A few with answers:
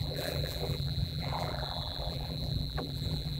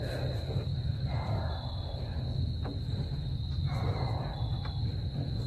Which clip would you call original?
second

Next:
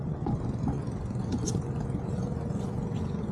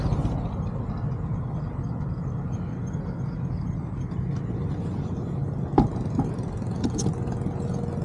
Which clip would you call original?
second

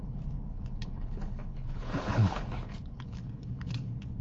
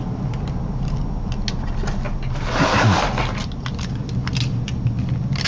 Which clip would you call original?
second